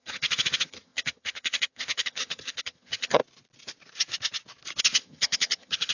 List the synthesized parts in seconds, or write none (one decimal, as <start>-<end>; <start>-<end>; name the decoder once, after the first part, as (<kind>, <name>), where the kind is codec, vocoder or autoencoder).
0.0-3.2 (vocoder, HiFi-GAN); 4.8-5.9